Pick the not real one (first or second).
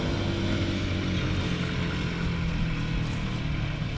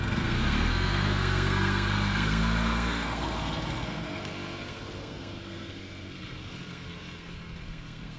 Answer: second